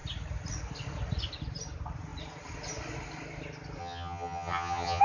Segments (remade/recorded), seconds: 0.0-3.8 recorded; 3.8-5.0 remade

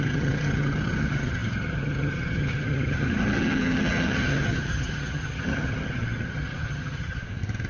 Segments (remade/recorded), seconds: 0.0-7.2 remade; 7.2-7.7 recorded

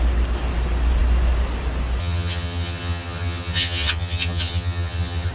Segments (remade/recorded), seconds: 0.0-2.0 recorded; 2.0-5.3 remade

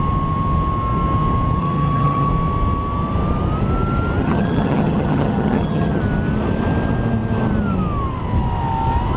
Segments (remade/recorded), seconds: 0.0-1.6 recorded; 1.6-2.3 remade; 2.3-4.2 recorded; 4.2-6.0 remade; 6.0-9.2 recorded

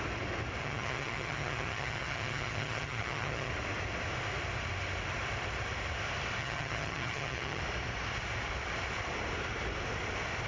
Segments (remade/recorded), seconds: 0.0-0.6 recorded; 0.6-3.5 remade; 3.5-6.4 recorded; 6.4-7.6 remade; 7.6-10.5 recorded

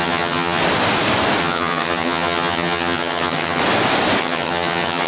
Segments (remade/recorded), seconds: 0.0-0.6 remade; 0.6-1.4 recorded; 1.4-3.6 remade; 3.6-4.2 recorded; 4.2-5.1 remade